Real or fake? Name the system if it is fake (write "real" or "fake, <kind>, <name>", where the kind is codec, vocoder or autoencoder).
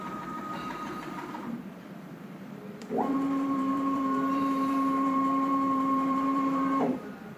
fake, vocoder, BigVGAN v2